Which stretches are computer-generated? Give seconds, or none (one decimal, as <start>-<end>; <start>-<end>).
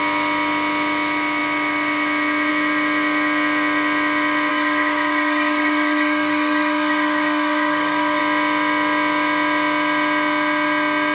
4.5-8.2